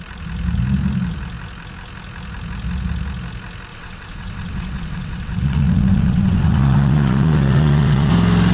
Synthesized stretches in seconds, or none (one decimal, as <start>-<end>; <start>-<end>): 3.7-8.1